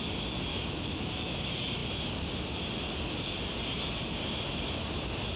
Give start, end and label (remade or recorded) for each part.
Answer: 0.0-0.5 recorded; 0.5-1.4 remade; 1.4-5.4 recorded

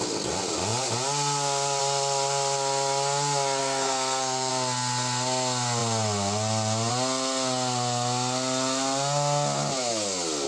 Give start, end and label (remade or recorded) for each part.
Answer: 0.0-3.6 recorded; 3.6-4.5 remade; 4.5-10.5 recorded

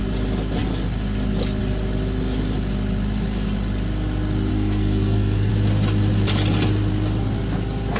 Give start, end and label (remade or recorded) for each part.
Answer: 0.0-4.5 recorded; 4.5-5.5 remade; 5.5-8.0 recorded

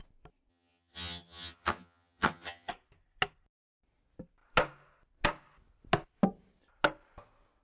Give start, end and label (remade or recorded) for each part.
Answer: 0.0-0.5 recorded; 0.5-2.7 remade; 2.7-7.6 recorded

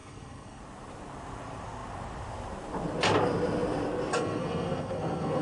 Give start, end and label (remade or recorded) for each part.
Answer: 0.0-0.6 remade; 0.6-4.1 recorded; 4.1-5.4 remade